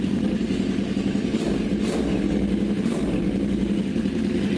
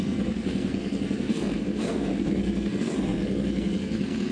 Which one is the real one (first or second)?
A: first